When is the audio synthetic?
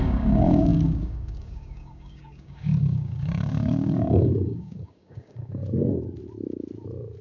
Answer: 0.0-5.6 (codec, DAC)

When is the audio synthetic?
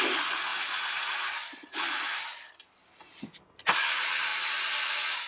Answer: none